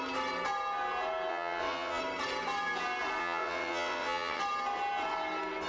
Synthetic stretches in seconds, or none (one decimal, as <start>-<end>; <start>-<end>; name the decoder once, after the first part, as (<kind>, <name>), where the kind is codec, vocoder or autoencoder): 1.3-2.0 (vocoder, WaveNeXt); 3.2-4.4